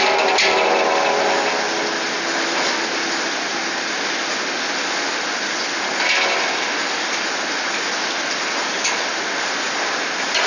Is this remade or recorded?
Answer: recorded